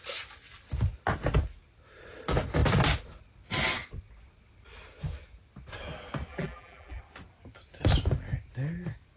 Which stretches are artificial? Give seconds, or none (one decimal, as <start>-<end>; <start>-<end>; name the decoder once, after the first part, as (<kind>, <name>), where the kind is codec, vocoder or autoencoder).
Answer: 6.3-7.0 (vocoder, BigVGAN v2)

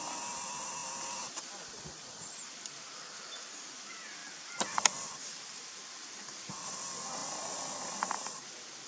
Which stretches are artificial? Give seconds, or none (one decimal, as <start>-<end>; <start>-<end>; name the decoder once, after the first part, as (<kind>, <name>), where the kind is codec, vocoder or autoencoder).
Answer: 4.2-6.5 (vocoder, BigVGAN v2)

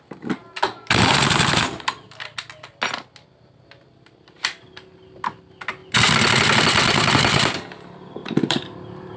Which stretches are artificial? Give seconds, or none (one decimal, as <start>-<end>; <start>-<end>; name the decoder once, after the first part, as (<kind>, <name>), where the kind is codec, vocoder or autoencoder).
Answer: 5.8-7.1 (vocoder, BigVGAN v2); 8.2-9.2

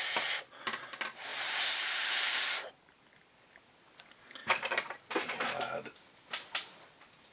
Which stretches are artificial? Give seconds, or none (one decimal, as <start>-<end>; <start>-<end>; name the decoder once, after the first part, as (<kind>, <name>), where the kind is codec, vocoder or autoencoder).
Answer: 1.3-2.7 (vocoder, BigVGAN v2); 4.4-5.0

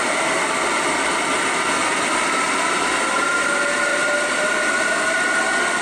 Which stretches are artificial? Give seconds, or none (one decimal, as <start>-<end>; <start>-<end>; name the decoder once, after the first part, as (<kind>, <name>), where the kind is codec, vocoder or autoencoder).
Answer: 1.8-3.5 (vocoder, BigVGAN v2); 3.9-5.3